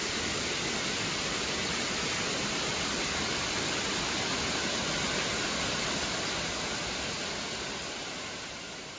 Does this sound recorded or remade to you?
recorded